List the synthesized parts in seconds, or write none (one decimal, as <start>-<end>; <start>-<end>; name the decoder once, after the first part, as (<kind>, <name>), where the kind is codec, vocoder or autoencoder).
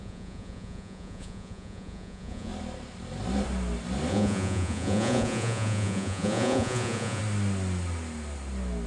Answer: 0.0-2.5 (vocoder, Vocos); 4.1-7.2